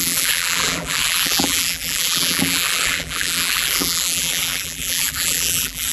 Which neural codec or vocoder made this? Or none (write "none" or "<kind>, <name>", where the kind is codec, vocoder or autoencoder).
vocoder, BigVGAN v2